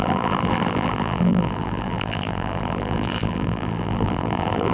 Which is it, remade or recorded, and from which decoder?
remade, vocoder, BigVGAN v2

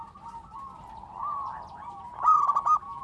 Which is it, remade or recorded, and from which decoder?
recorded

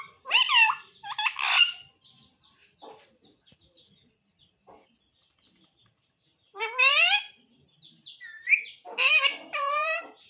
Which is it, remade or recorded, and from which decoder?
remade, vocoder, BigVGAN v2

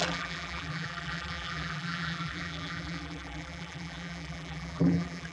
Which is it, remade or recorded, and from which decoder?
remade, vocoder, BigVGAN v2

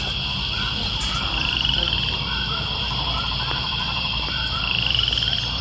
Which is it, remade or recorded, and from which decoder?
remade, vocoder, BigVGAN v2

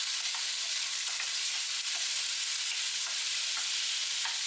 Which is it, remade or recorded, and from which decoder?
remade, vocoder, BigVGAN v2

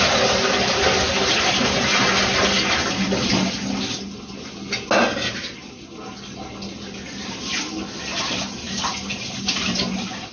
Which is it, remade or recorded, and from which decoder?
recorded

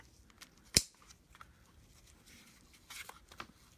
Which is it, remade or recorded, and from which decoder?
recorded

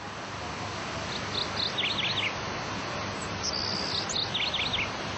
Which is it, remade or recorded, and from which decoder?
recorded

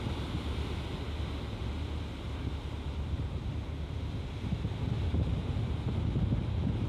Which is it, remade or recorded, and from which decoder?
recorded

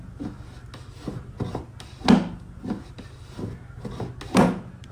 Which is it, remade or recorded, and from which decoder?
recorded